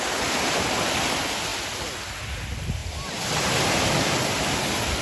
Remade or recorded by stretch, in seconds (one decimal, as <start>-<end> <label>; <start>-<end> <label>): 0.0-5.0 recorded

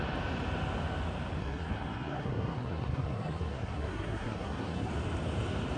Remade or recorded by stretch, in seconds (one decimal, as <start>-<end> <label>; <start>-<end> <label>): 0.0-1.4 recorded; 1.4-4.9 remade; 4.9-5.8 recorded

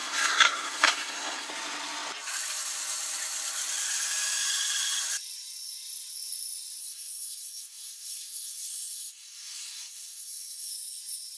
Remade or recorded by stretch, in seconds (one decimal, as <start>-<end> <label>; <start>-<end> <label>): 0.0-1.5 remade; 1.5-6.8 recorded; 6.8-10.7 remade; 10.7-11.4 recorded

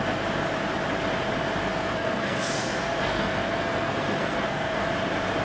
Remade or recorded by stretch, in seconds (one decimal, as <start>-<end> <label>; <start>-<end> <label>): 0.0-1.6 recorded; 1.6-4.8 remade; 4.8-5.4 recorded

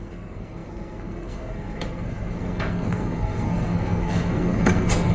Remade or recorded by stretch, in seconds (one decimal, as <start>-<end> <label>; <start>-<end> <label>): 0.0-5.1 remade